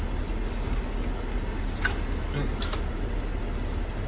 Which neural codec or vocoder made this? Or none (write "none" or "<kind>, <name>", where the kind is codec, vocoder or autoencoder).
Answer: none